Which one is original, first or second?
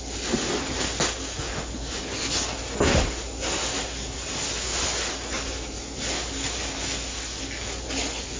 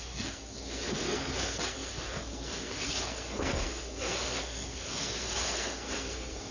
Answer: first